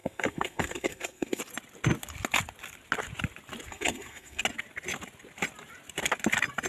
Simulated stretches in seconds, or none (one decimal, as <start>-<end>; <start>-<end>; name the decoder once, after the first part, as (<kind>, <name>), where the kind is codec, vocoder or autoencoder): 0.0-1.4 (codec, SNAC); 3.7-4.4